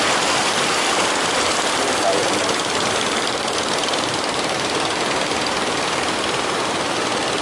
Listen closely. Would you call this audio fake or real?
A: fake